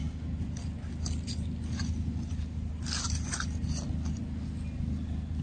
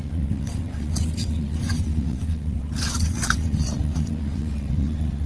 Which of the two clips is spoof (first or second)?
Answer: second